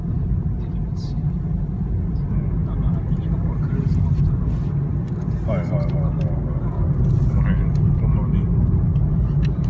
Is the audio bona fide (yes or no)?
yes